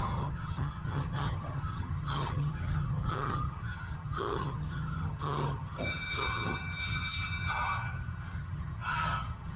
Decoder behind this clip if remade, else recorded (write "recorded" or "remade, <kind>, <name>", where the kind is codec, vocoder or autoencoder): remade, vocoder, HiFi-GAN